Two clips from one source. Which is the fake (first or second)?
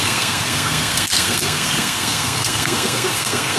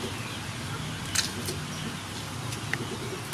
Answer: first